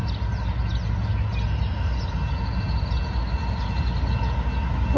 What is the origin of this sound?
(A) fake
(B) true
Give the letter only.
B